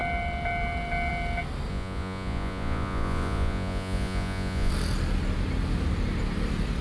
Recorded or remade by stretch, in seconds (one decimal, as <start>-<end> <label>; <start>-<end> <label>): 0.0-1.7 recorded; 1.7-4.7 remade; 4.7-6.8 recorded

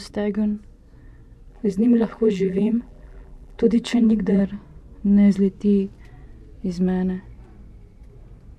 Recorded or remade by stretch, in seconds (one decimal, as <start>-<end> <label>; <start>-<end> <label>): 0.0-1.5 recorded; 1.5-4.4 remade; 4.4-8.6 recorded

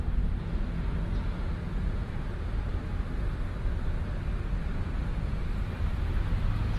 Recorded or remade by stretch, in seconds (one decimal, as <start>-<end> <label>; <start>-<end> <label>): 0.0-1.3 recorded; 1.3-2.1 remade; 2.1-6.8 recorded

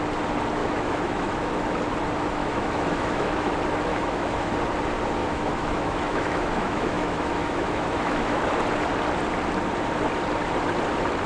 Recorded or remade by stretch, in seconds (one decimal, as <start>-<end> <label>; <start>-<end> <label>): 0.0-0.6 recorded; 0.6-1.5 remade; 1.5-2.4 recorded; 2.4-3.5 remade; 3.5-3.9 recorded; 3.9-4.5 remade; 4.5-5.2 recorded; 5.2-8.4 remade; 8.4-11.3 recorded

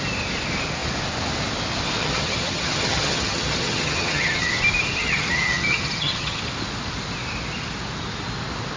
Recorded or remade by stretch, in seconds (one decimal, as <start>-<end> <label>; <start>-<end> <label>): 0.0-2.0 recorded; 2.0-4.5 remade; 4.5-5.0 recorded; 5.0-6.4 remade; 6.4-8.8 recorded